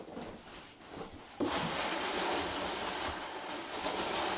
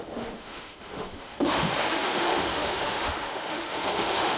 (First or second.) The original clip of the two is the first